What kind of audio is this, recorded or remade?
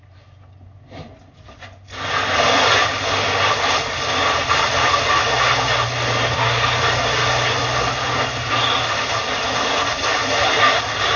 recorded